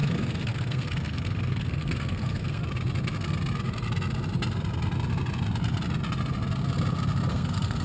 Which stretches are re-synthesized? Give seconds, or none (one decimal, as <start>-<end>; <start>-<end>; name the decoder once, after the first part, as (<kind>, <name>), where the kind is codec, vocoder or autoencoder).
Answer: 0.0-2.6 (codec, SNAC); 7.3-7.8